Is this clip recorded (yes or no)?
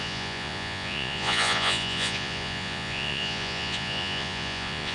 no